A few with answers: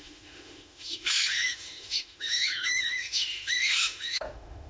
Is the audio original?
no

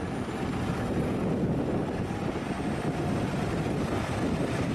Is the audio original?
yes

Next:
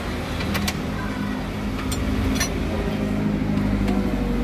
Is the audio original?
yes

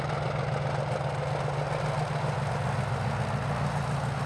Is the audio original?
yes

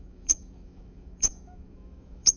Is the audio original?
no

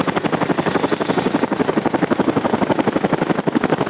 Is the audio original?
yes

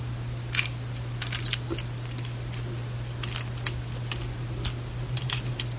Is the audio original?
yes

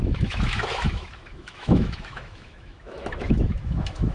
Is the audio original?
no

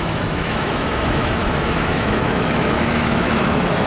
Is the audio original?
no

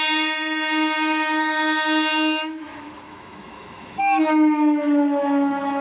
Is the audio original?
no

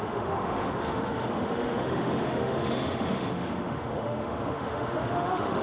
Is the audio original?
no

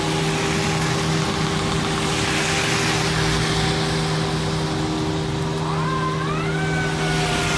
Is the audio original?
yes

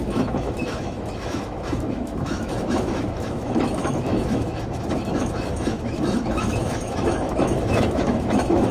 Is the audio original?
no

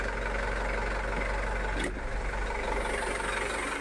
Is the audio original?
yes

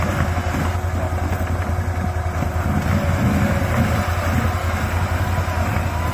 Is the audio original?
yes